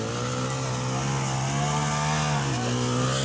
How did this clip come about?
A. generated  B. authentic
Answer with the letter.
B